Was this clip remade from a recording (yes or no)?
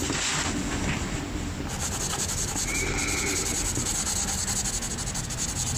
no